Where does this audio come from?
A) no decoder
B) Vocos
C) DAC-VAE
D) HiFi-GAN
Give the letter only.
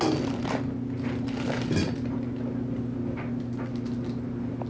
A